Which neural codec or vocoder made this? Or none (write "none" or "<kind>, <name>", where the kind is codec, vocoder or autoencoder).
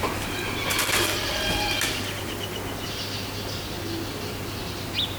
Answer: none